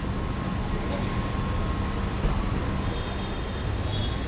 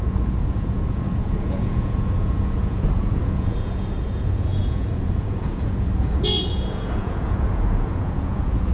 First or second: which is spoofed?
second